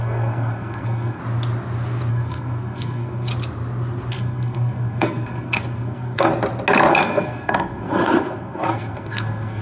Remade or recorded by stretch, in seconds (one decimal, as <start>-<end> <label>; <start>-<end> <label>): 0.0-1.2 remade; 1.2-2.1 recorded; 2.1-3.3 remade; 3.3-4.1 recorded; 4.1-6.3 remade; 6.3-6.9 recorded; 6.9-9.6 remade